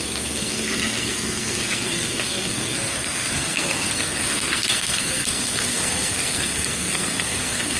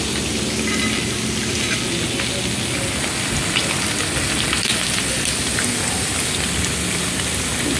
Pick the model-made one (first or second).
first